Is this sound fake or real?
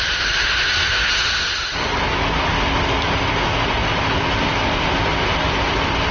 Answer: real